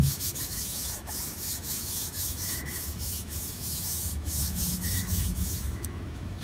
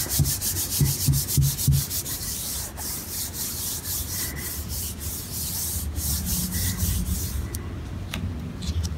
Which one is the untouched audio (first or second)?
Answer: second